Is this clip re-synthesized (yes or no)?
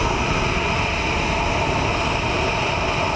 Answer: no